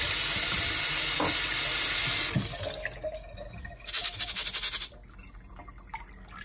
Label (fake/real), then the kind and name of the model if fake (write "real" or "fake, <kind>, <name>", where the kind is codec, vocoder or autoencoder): real